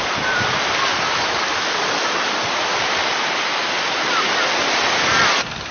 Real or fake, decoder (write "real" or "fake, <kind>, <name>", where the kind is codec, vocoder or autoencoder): real